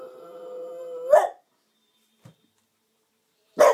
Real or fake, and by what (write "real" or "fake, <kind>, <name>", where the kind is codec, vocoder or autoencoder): real